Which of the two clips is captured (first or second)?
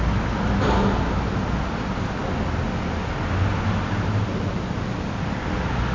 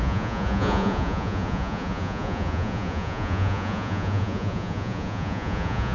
first